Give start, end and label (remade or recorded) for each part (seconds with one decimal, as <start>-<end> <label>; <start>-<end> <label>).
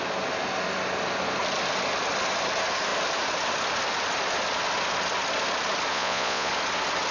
0.0-5.9 recorded; 5.9-6.5 remade; 6.5-7.1 recorded